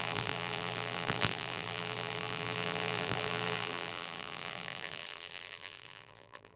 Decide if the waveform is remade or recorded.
remade